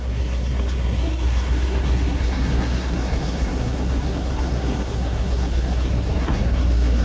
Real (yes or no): no